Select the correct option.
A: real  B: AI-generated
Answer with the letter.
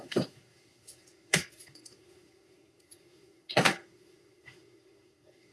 B